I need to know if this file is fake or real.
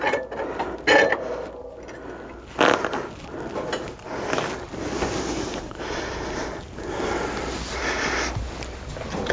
real